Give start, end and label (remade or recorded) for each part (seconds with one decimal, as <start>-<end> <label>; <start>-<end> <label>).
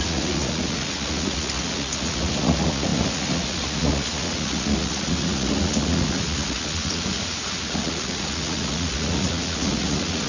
0.0-10.3 remade